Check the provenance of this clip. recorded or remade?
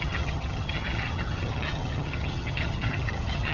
remade